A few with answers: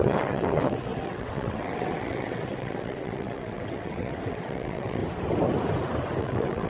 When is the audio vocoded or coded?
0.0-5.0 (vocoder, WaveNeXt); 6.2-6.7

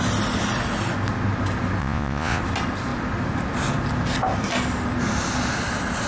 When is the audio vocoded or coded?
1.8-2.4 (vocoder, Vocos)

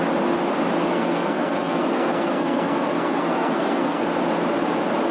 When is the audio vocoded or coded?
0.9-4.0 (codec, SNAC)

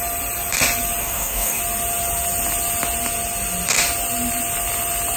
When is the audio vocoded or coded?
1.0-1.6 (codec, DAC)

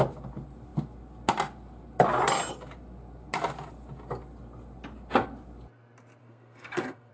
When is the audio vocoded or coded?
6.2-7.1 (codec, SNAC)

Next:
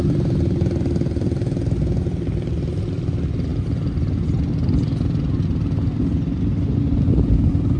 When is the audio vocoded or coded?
none